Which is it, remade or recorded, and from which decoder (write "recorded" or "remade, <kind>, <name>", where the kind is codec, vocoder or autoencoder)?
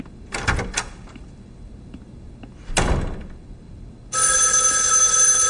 recorded